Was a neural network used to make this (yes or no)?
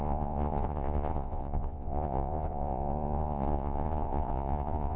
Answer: yes